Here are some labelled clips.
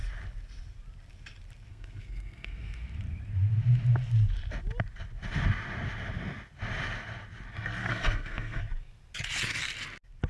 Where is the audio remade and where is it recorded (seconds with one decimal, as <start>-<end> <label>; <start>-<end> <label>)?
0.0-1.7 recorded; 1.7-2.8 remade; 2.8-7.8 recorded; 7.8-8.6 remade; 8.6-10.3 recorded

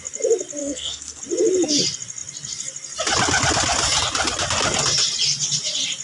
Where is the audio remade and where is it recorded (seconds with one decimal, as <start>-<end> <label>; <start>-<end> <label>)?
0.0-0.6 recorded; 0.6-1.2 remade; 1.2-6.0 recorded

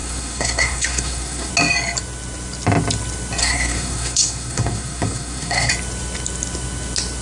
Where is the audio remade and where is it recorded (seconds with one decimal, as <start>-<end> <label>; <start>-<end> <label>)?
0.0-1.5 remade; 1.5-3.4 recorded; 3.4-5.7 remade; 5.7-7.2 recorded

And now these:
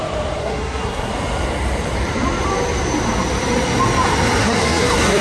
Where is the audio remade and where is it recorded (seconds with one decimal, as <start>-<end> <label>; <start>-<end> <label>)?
0.0-0.4 recorded; 0.4-1.1 remade; 1.1-4.4 recorded; 4.4-5.2 remade

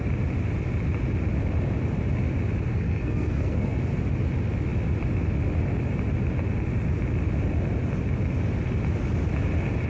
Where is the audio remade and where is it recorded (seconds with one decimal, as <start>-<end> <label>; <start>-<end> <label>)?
0.0-2.7 recorded; 2.7-3.8 remade; 3.8-9.9 recorded